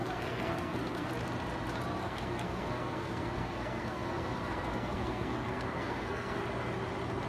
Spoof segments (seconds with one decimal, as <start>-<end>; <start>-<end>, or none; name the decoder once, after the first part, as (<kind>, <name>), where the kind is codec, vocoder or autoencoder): 0.0-1.1 (codec, SNAC); 2.0-6.4